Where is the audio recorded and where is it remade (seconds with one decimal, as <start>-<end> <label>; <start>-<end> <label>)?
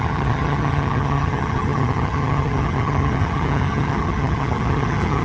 0.0-5.2 remade